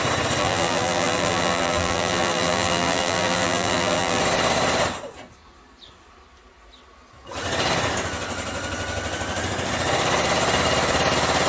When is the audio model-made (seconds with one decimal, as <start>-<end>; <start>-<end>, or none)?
0.4-4.2